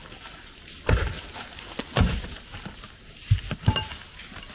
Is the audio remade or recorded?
recorded